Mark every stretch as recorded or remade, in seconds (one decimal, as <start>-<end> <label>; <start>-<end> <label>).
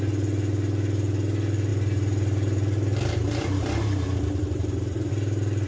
0.0-1.7 recorded; 1.7-5.1 remade; 5.1-5.7 recorded